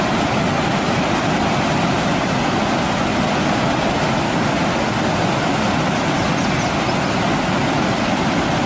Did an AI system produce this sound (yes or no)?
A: no